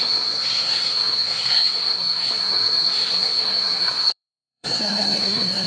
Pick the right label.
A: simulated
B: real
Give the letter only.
A